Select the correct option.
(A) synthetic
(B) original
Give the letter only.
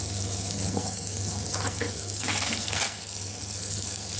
A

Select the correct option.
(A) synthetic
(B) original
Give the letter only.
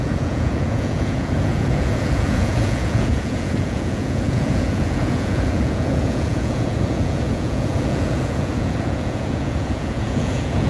A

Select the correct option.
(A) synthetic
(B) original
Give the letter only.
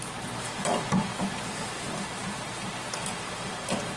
A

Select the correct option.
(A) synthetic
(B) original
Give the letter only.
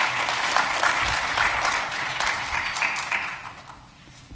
B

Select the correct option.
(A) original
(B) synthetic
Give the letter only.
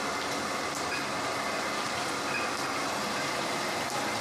A